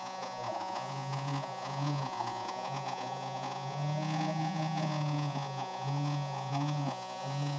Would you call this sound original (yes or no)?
no